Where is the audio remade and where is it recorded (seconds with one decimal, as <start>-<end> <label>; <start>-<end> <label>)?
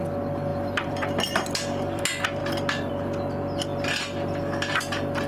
0.0-0.5 recorded; 0.5-2.0 remade; 2.0-3.7 recorded; 3.7-4.8 remade; 4.8-5.3 recorded